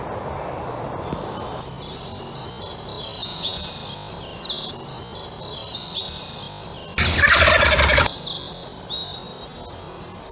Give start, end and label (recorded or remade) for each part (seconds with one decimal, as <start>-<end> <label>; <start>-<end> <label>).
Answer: 0.0-3.2 recorded; 3.2-3.7 remade; 3.7-10.3 recorded